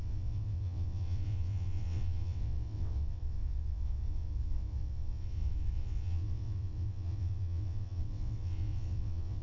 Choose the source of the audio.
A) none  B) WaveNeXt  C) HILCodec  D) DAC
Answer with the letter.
B